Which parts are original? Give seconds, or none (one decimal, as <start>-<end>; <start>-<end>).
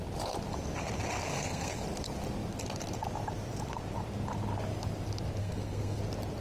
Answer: 0.0-1.3; 1.8-5.4; 6.0-6.4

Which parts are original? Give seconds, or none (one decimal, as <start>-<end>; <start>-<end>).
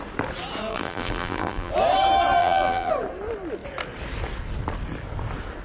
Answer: 0.0-0.7; 1.7-2.4; 2.9-5.6